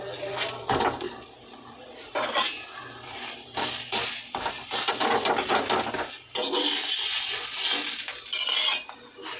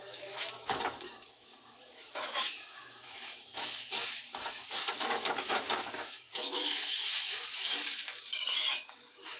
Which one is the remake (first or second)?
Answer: second